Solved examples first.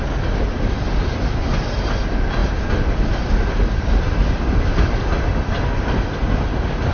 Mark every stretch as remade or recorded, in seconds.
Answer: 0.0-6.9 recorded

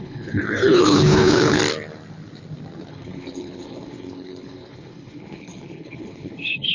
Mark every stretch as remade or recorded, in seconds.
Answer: 0.0-1.6 remade; 1.6-2.9 recorded; 2.9-6.7 remade

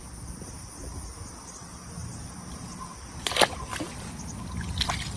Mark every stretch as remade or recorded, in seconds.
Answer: 0.0-5.2 recorded